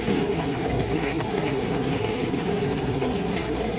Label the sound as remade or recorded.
remade